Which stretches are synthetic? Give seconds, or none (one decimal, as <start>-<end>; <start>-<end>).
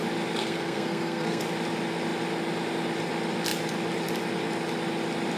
0.4-1.4